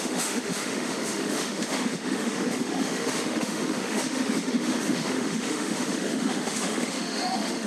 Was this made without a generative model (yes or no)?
no